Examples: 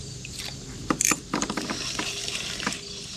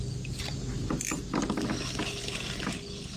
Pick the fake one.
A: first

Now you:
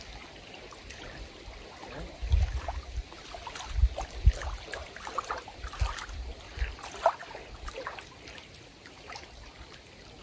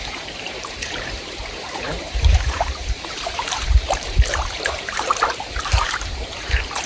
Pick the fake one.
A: second